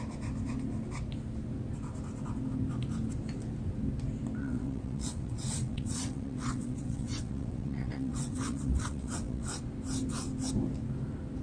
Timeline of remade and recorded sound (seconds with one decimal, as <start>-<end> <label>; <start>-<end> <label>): 0.0-4.4 recorded; 4.4-9.6 remade; 9.6-11.4 recorded